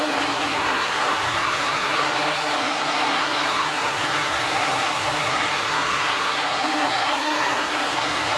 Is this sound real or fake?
fake